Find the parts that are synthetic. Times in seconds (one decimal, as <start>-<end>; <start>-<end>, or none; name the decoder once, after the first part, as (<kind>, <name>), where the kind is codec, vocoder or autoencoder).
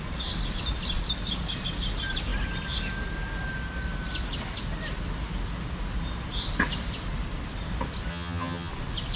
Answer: 8.1-8.7 (vocoder, HiFi-GAN)